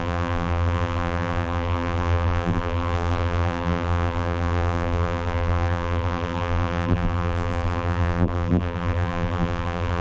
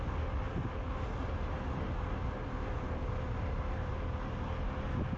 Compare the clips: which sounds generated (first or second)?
first